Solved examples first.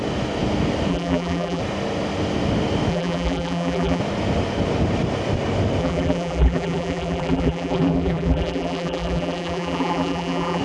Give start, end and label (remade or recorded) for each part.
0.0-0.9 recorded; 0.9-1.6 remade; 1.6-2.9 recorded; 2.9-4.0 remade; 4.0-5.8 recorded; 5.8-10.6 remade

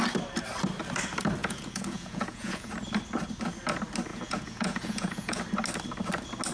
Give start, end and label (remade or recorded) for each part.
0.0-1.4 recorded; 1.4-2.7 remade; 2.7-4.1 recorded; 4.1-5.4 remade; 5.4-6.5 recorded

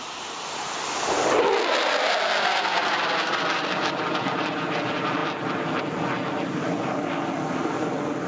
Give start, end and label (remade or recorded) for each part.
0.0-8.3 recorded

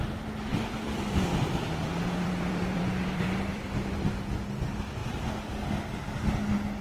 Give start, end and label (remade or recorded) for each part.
0.0-0.5 recorded; 0.5-3.9 remade; 3.9-6.8 recorded